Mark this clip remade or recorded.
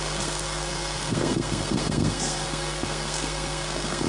remade